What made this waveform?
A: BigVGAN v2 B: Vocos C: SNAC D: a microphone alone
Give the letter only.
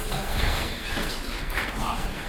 C